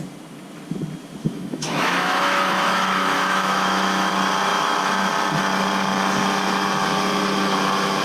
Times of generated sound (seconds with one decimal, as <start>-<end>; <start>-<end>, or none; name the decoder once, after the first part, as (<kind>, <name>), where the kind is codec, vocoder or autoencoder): 1.2-4.1 (autoencoder, DAC-VAE); 4.5-5.1